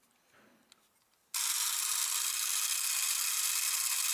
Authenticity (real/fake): real